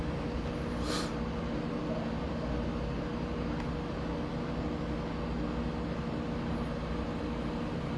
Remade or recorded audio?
recorded